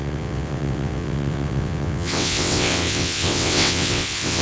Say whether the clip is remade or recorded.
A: remade